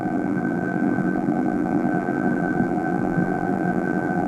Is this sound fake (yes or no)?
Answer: yes